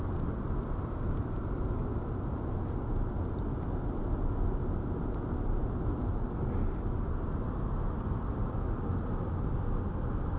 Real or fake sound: real